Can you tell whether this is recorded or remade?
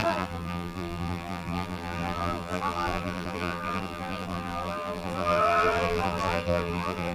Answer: remade